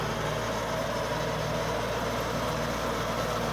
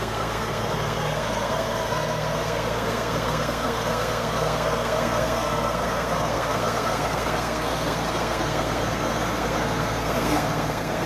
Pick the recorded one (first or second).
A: first